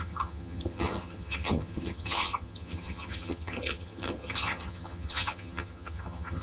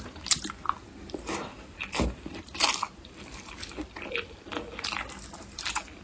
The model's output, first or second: first